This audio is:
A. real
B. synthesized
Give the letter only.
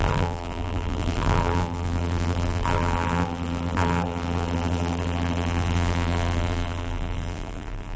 B